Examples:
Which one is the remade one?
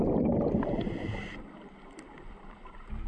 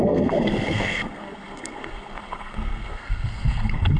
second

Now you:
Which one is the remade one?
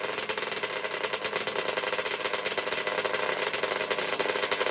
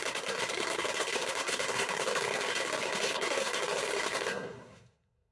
second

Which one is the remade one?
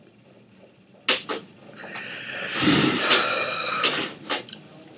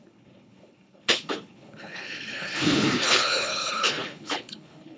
second